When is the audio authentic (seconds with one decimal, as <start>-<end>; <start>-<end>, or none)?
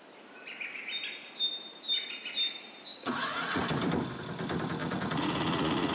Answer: 0.0-2.9; 3.6-4.8